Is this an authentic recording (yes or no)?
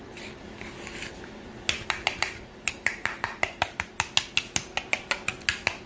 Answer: yes